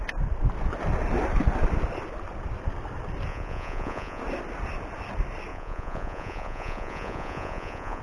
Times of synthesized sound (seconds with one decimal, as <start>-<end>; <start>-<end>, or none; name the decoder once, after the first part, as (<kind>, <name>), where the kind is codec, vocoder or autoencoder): 3.3-4.2 (vocoder, Vocos); 5.5-8.0